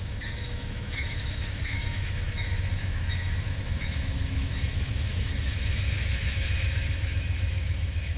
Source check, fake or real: fake